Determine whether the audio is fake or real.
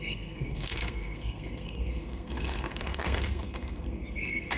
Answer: fake